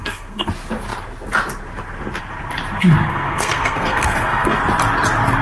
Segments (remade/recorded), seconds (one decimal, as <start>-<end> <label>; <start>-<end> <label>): 0.0-0.5 remade; 0.5-3.0 recorded; 3.0-4.6 remade; 4.6-5.4 recorded